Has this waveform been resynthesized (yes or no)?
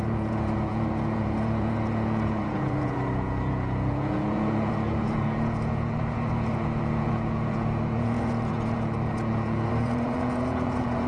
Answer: yes